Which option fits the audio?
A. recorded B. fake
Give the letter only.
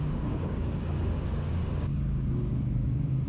B